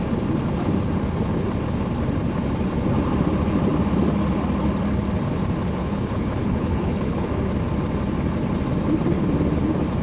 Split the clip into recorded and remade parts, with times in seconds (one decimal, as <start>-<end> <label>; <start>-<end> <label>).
0.0-5.8 recorded; 5.8-7.3 remade; 7.3-10.0 recorded